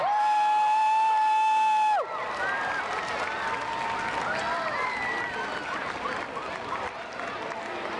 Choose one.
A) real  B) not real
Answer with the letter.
A